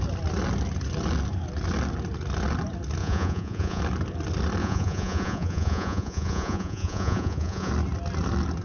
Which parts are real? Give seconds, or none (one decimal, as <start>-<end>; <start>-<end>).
0.0-3.0; 3.8-4.6; 7.7-8.6